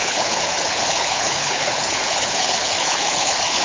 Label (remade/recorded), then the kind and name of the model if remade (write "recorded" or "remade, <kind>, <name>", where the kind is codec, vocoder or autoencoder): remade, codec, HILCodec